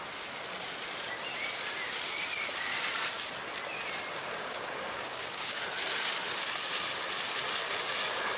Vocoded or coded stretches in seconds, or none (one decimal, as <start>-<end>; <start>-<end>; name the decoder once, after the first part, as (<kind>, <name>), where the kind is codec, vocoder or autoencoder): 4.2-5.6 (codec, DAC)